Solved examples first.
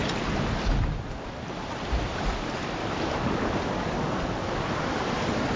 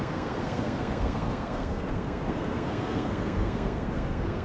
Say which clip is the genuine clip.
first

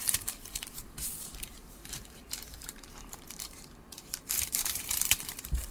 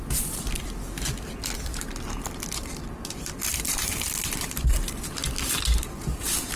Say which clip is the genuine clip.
second